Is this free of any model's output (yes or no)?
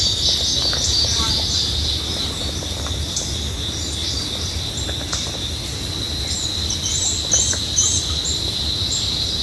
yes